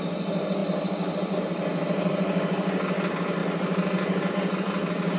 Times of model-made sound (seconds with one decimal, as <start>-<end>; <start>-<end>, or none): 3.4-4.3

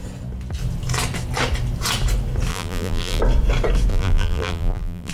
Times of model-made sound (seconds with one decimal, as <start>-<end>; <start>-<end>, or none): 2.5-3.2; 3.9-5.1

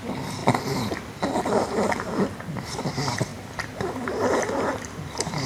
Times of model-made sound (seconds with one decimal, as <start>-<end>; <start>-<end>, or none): 0.0-0.4; 2.7-3.3